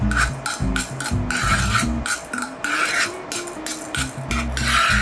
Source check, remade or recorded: recorded